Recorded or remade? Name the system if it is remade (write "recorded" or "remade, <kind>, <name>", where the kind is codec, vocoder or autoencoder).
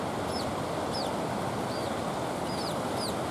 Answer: recorded